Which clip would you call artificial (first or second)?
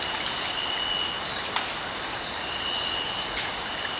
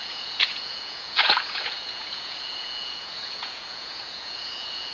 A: second